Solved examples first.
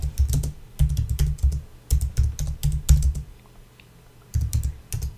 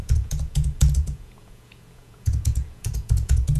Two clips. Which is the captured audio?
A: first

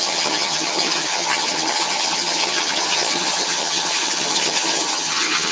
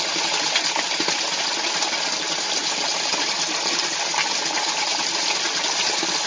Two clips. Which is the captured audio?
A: second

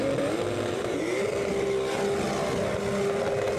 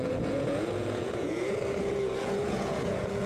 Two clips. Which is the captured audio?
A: first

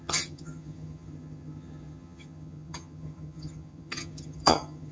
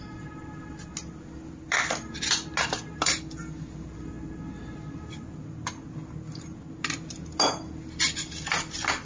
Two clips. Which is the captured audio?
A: second